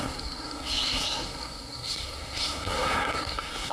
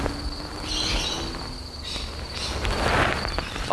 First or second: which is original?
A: second